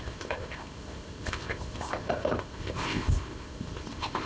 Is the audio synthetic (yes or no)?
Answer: yes